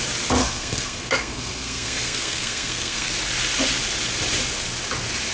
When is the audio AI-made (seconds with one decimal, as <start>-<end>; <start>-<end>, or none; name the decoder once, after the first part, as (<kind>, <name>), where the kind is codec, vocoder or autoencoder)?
0.4-3.1 (codec, SNAC)